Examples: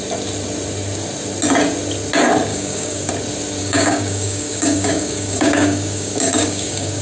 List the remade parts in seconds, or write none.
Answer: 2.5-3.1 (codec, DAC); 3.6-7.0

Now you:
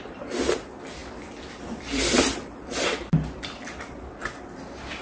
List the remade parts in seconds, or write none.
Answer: none

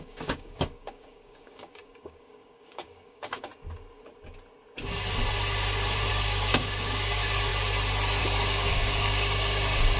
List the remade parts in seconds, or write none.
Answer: 0.0-3.5 (codec, DAC); 6.1-7.5; 8.2-10.0

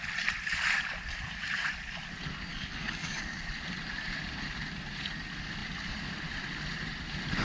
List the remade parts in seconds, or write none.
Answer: 2.5-3.2 (codec, DAC)

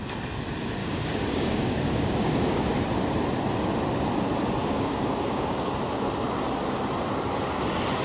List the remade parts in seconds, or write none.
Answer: 0.8-2.7 (codec, DAC); 4.6-5.7